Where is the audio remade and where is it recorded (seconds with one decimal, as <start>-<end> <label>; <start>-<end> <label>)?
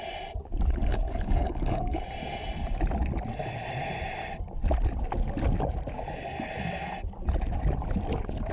0.0-0.8 recorded; 0.8-2.0 remade; 2.0-8.5 recorded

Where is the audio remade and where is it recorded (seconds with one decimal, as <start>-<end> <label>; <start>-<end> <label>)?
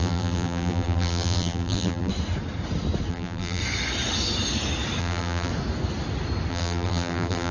0.0-2.1 remade; 2.1-3.1 recorded; 3.1-3.6 remade; 3.6-5.0 recorded; 5.0-5.5 remade; 5.5-6.5 recorded; 6.5-7.5 remade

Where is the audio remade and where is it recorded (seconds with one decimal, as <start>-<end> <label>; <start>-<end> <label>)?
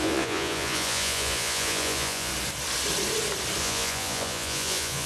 0.0-2.3 remade; 2.3-3.6 recorded; 3.6-5.1 remade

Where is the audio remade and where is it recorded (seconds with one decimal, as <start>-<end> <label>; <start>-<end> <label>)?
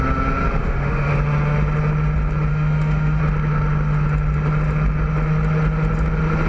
0.0-0.6 recorded; 0.6-1.1 remade; 1.1-2.5 recorded; 2.5-3.2 remade; 3.2-6.5 recorded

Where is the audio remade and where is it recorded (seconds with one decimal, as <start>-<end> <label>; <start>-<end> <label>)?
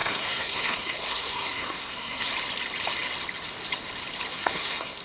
0.0-2.3 remade; 2.3-4.3 recorded; 4.3-5.0 remade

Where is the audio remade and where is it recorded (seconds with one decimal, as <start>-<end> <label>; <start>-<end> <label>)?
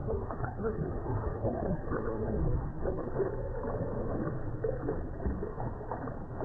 0.0-3.1 remade; 3.1-6.4 recorded